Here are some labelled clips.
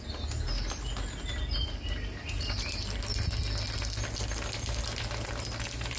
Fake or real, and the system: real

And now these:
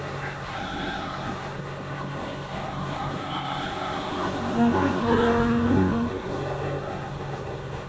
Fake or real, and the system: fake, codec, SNAC